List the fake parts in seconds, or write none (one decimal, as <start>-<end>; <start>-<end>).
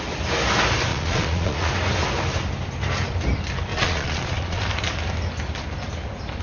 0.9-1.7; 3.7-4.6